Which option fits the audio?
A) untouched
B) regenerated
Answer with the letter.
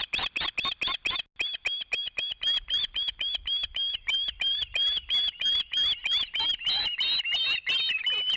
A